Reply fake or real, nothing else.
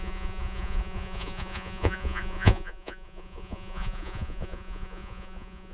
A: fake